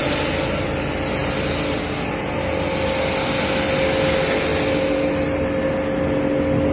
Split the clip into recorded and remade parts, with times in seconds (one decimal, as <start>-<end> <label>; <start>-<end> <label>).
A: 0.0-6.7 recorded

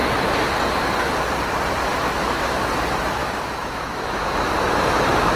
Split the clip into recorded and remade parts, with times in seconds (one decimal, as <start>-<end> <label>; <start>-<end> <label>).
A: 0.0-1.9 recorded; 1.9-2.6 remade; 2.6-3.2 recorded; 3.2-5.4 remade

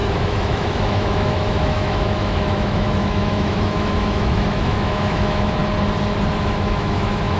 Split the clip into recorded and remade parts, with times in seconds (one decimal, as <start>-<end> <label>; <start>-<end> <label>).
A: 0.0-5.6 remade; 5.6-6.4 recorded; 6.4-7.4 remade

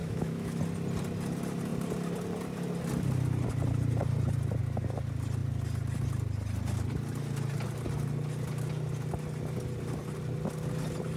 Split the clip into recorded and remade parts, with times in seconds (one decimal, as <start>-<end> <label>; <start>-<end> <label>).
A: 0.0-0.6 remade; 0.6-11.2 recorded

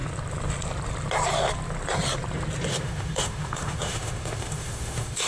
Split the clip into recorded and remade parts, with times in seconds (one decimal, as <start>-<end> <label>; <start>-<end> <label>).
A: 0.0-2.7 recorded; 2.7-5.3 remade